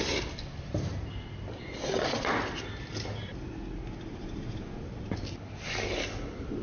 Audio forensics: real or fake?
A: real